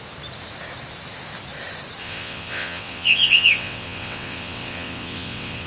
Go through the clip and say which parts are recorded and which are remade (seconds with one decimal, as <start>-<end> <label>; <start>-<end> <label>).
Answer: 0.0-2.0 recorded; 2.0-5.7 remade